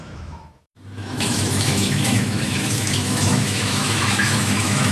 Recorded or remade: remade